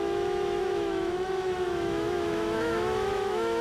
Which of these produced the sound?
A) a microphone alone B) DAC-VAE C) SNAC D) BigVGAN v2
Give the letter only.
B